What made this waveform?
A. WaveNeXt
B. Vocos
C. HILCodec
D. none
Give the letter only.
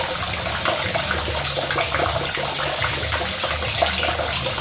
D